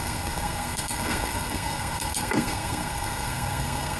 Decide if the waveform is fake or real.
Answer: fake